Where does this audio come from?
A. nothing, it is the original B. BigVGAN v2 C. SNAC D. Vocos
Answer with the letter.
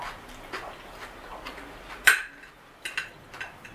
A